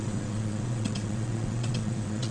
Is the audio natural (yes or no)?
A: no